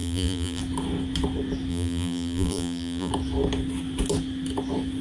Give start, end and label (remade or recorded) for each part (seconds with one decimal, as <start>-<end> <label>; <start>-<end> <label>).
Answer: 0.0-0.6 remade; 0.6-1.7 recorded; 1.7-3.1 remade; 3.1-5.0 recorded